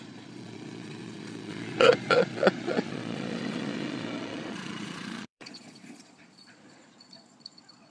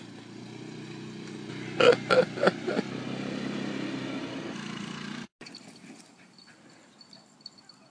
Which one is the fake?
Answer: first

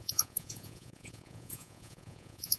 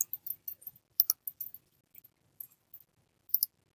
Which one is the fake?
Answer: first